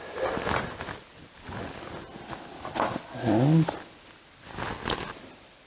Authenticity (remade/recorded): recorded